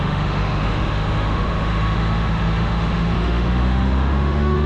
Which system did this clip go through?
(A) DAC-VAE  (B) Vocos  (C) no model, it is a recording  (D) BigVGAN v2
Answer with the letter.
A